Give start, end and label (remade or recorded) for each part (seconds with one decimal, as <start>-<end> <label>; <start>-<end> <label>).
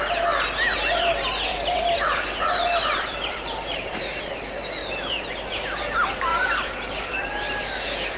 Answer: 0.0-1.5 recorded; 1.5-4.0 remade; 4.0-8.2 recorded